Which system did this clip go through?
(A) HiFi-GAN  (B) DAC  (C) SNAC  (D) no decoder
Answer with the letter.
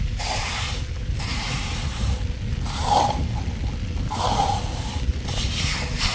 D